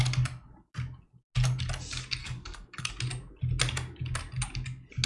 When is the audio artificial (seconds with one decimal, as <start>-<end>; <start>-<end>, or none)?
2.2-2.9